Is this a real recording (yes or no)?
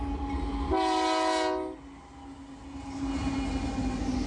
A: yes